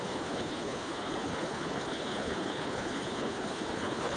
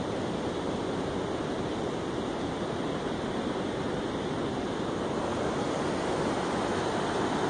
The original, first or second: second